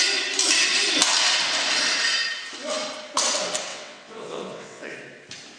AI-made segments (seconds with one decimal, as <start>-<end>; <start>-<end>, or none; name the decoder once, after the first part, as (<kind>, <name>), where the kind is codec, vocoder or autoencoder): 3.7-4.9 (vocoder, WaveNeXt)